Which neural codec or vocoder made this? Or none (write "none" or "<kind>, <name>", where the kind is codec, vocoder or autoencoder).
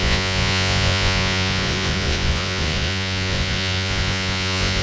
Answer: vocoder, Vocos